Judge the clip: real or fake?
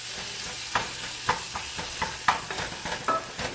real